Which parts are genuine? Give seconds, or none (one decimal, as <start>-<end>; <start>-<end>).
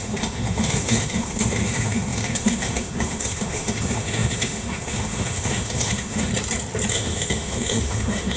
6.3-6.9